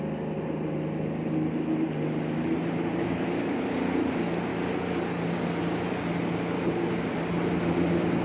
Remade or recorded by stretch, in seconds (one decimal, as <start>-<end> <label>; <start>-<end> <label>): 0.0-8.2 recorded

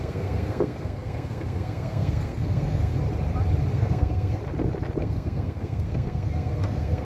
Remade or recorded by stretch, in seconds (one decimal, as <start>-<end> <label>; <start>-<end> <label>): 0.0-2.9 remade; 2.9-3.7 recorded; 3.7-4.4 remade; 4.4-5.0 recorded; 5.0-7.0 remade

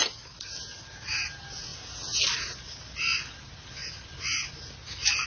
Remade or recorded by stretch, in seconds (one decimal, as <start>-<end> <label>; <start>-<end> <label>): 0.0-5.3 recorded

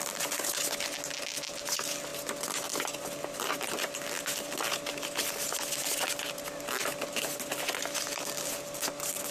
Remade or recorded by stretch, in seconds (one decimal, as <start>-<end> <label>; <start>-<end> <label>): 0.0-9.3 recorded

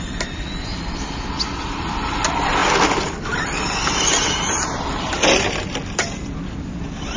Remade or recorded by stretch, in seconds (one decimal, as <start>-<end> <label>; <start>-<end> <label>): 0.0-7.2 recorded

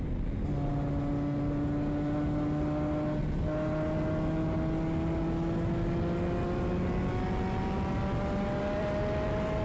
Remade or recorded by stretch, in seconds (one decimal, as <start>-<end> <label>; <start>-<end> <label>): 0.0-9.6 recorded